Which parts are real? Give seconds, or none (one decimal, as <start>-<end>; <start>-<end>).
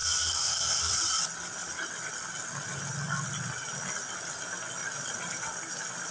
0.9-6.1